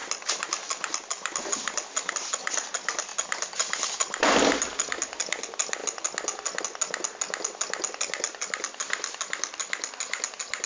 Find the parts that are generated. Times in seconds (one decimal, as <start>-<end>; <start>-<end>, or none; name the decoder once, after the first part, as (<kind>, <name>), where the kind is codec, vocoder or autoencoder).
3.1-4.3 (vocoder, BigVGAN v2)